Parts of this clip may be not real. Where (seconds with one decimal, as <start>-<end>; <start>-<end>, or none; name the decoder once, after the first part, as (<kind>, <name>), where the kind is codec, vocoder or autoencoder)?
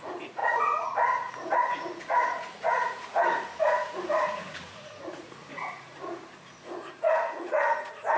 0.0-8.2 (vocoder, Vocos)